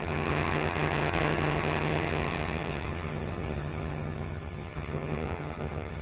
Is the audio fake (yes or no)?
yes